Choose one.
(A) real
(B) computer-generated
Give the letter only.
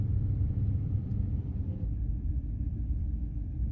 B